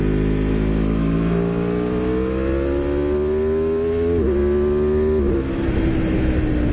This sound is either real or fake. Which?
real